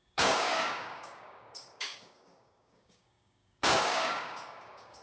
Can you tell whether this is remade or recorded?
remade